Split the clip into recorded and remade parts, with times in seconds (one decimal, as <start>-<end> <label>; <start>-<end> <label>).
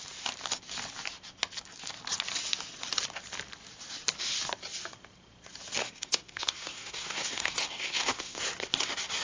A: 0.0-5.8 recorded; 5.8-8.4 remade; 8.4-9.2 recorded